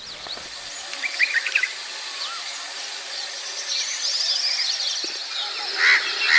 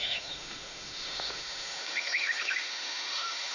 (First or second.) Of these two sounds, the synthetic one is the second